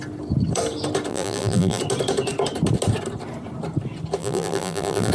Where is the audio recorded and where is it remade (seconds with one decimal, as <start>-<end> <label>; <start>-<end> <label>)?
0.0-1.1 recorded; 1.1-1.8 remade; 1.8-4.2 recorded; 4.2-5.1 remade

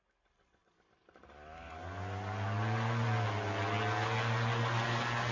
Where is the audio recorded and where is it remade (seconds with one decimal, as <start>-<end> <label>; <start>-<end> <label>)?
0.0-5.3 recorded

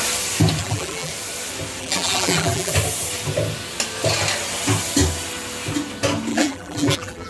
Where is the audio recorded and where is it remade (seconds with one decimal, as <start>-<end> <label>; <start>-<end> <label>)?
0.0-0.6 recorded; 0.6-1.1 remade; 1.1-1.8 recorded; 1.8-2.7 remade; 2.7-6.3 recorded; 6.3-7.3 remade

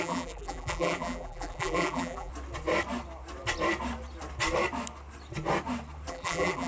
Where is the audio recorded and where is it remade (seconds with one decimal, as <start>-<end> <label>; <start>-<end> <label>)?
0.0-2.3 remade; 2.3-6.1 recorded; 6.1-6.7 remade

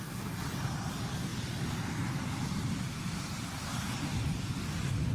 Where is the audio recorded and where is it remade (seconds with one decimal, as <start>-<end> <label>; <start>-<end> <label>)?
0.0-5.1 remade

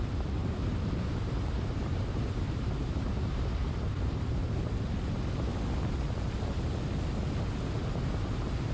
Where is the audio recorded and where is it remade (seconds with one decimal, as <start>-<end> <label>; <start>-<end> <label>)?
0.0-0.4 recorded; 0.4-4.6 remade; 4.6-8.7 recorded

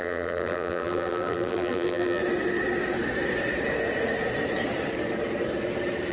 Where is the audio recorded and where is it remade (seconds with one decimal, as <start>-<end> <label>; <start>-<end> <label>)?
0.0-2.2 remade; 2.2-6.1 recorded